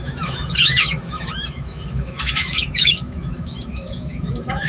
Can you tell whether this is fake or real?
fake